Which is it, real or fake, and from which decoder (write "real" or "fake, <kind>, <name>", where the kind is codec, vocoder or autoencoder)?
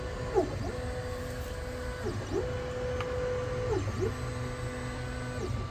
real